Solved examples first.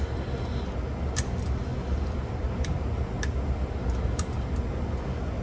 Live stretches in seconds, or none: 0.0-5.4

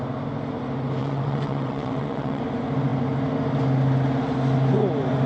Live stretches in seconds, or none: 0.0-1.0; 2.4-5.3

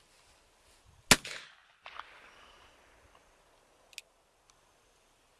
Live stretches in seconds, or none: 0.0-5.4

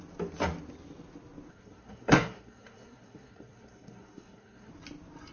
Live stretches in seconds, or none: 0.0-1.5; 4.7-5.3

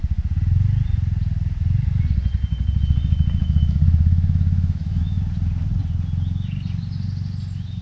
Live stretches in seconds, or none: 0.0-3.4; 5.2-7.8

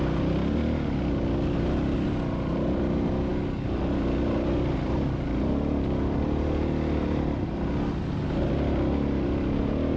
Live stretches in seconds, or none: 0.0-10.0

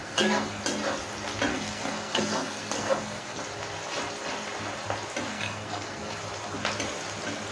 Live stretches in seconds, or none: 0.6-1.5; 3.4-5.3; 6.2-7.5

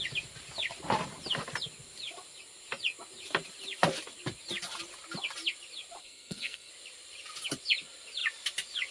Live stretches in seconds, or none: 0.0-6.0; 6.7-8.9